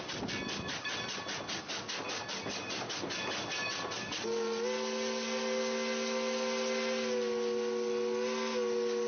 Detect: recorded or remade recorded